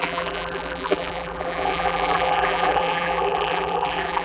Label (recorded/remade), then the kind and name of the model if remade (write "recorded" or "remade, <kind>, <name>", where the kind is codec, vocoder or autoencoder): remade, vocoder, BigVGAN v2